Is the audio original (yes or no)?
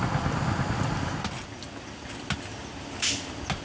yes